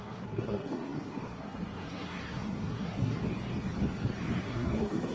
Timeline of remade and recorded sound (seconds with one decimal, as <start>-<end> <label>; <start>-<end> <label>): 0.0-3.2 remade; 3.2-4.4 recorded; 4.4-5.1 remade